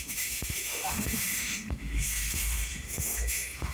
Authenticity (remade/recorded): remade